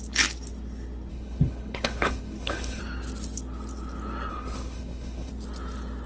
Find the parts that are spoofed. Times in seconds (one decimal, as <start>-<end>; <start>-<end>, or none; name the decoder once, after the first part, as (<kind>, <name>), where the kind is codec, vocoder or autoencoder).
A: 1.1-2.8 (codec, HILCodec); 4.3-5.3